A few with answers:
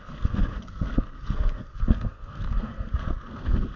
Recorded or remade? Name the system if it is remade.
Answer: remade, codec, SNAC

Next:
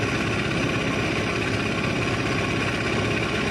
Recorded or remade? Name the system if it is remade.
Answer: recorded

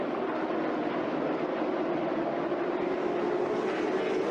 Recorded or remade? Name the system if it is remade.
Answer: remade, vocoder, BigVGAN v2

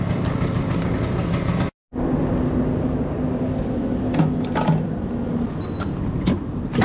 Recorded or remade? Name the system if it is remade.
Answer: recorded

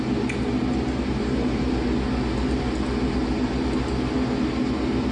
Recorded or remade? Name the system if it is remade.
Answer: recorded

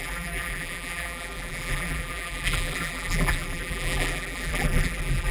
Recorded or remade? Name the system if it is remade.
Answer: remade, vocoder, BigVGAN v2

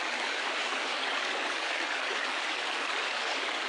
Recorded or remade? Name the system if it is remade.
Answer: remade, codec, DAC